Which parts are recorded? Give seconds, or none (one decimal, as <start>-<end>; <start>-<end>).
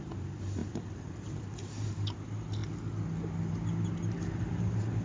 2.6-4.3